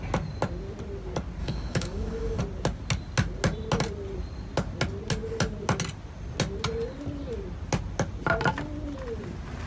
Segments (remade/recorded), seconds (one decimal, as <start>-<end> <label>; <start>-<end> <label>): 0.0-1.4 recorded; 1.4-2.4 remade; 2.4-9.7 recorded